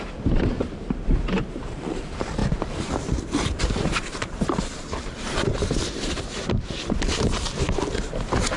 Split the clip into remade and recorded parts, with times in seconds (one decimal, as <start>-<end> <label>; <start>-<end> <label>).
0.0-8.6 remade